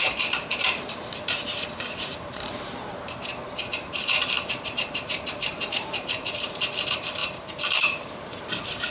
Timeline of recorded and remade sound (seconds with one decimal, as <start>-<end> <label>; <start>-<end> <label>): 0.0-8.9 remade